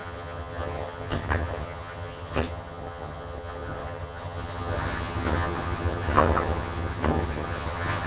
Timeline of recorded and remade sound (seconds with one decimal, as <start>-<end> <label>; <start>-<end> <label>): 0.0-8.1 remade